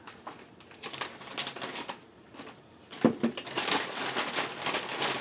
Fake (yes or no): no